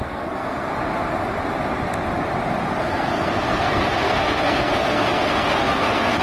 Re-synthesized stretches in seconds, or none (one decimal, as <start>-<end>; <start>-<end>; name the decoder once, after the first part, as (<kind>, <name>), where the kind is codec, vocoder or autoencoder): 0.0-0.7 (codec, SNAC); 2.8-6.2